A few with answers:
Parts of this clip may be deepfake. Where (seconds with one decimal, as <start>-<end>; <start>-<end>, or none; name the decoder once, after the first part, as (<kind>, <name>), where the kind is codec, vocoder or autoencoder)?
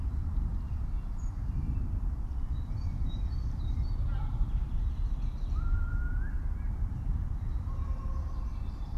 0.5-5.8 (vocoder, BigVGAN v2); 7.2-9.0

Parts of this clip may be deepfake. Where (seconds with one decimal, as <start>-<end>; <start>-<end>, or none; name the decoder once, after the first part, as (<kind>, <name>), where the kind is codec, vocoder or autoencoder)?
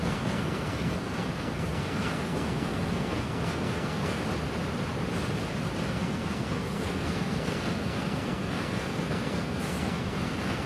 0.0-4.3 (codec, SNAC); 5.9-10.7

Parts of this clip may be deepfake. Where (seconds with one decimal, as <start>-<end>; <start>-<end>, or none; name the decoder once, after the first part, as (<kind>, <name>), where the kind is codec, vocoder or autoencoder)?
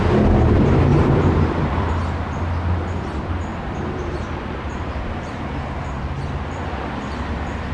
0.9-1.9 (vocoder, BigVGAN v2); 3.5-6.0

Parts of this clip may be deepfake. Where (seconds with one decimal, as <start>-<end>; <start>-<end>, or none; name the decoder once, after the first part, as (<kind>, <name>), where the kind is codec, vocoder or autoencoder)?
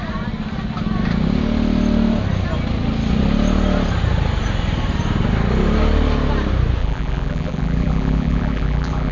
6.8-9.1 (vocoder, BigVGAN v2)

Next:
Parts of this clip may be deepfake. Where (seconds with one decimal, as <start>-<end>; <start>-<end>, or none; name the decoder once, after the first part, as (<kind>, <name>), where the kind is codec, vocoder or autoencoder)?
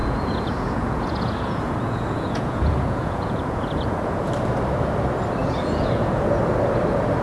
0.0-4.3 (vocoder, Vocos); 5.4-6.4